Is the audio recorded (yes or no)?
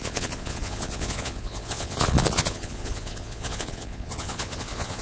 no